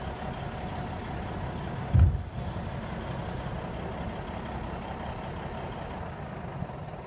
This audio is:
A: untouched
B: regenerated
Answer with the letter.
A